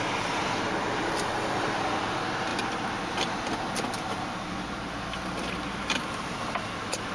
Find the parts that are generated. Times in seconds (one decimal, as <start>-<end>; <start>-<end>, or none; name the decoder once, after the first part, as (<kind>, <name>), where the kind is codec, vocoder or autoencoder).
none